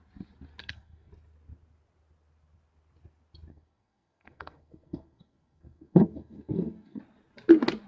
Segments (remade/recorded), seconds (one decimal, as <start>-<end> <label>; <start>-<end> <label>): 0.0-0.6 recorded; 0.6-1.1 remade; 1.1-3.5 recorded; 3.5-7.0 remade; 7.0-7.9 recorded